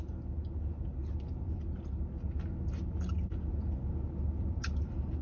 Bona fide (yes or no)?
yes